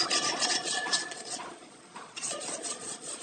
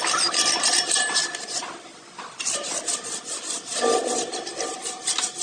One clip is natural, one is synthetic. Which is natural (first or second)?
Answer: second